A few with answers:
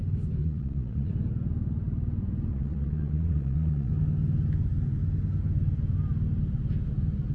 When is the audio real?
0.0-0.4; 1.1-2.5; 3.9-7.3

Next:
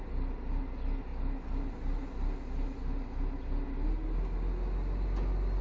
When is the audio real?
0.0-5.6